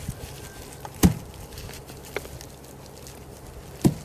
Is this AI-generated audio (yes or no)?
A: no